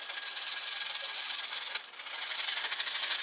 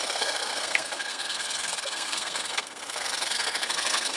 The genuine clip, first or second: first